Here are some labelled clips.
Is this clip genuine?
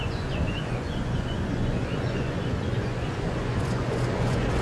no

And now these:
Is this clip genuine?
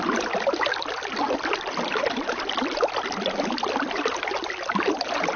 yes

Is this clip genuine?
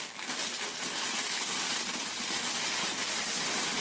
yes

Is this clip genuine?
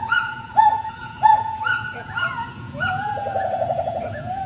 no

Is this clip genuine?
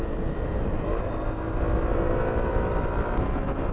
yes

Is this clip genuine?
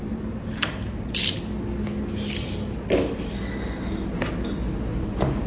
yes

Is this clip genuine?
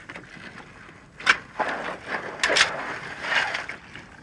yes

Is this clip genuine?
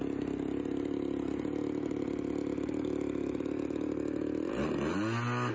yes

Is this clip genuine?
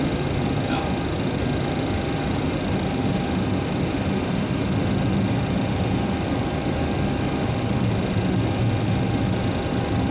yes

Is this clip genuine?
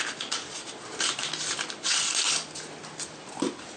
yes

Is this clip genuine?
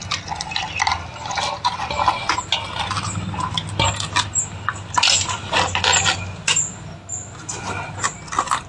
yes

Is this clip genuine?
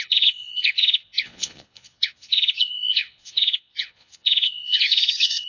no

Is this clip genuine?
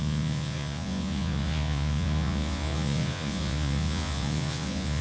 no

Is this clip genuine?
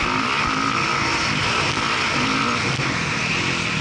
yes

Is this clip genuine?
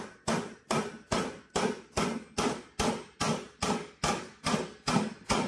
yes